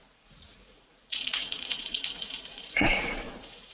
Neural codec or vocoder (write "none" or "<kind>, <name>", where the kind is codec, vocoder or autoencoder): vocoder, Vocos